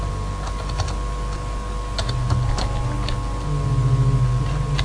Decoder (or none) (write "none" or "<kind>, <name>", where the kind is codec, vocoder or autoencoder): none